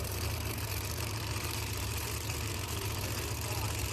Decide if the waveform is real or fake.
fake